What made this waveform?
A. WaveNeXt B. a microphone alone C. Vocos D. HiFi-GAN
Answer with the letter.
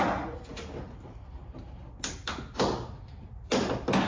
B